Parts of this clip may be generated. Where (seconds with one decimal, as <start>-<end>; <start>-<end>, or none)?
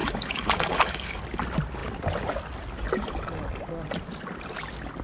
0.0-1.2